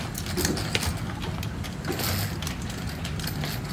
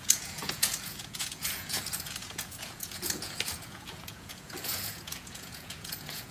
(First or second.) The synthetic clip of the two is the second